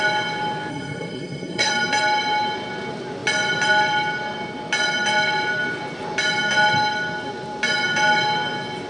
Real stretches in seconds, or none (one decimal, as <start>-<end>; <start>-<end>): 0.0-0.7; 1.7-8.9